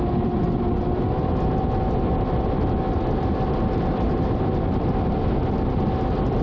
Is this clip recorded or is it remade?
recorded